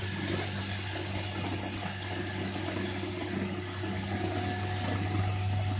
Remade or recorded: recorded